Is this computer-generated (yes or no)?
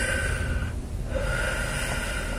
no